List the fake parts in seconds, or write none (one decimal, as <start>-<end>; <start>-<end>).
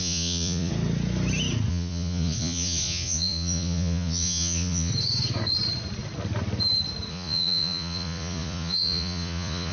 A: 0.0-0.7; 1.7-4.9; 7.1-9.7